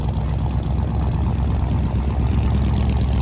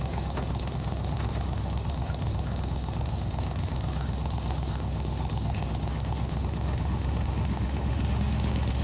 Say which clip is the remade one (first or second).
second